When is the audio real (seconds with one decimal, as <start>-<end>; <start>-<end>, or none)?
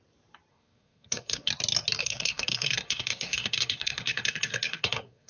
0.0-0.5; 1.5-2.0